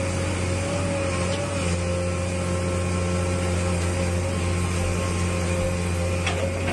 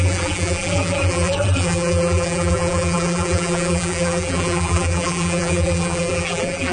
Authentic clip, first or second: first